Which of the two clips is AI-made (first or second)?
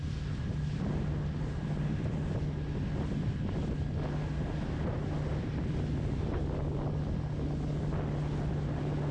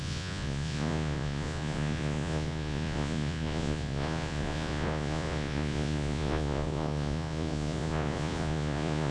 second